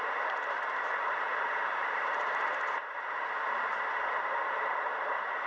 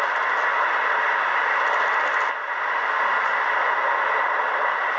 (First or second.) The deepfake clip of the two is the first